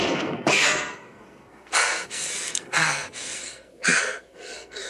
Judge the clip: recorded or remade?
remade